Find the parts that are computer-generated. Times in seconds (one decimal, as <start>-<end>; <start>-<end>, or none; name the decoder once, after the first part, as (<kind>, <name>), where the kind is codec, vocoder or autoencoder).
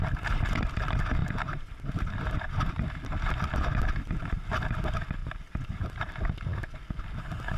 1.2-2.9 (vocoder, BigVGAN v2); 5.2-6.1